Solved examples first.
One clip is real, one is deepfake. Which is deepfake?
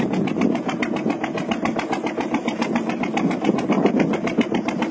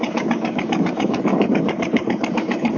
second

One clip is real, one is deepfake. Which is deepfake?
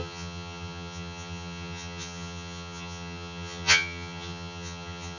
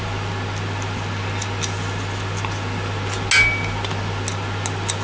first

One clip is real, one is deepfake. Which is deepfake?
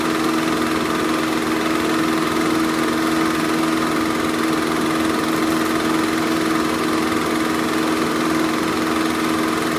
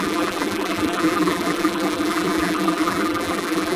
second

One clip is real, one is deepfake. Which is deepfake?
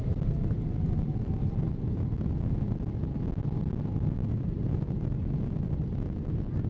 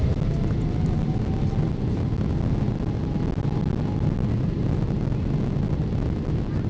first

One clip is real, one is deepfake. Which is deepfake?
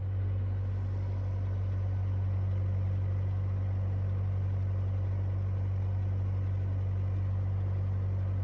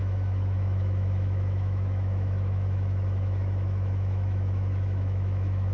second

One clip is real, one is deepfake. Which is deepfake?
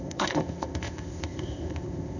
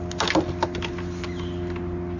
first